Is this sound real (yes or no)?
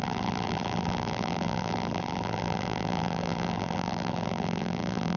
no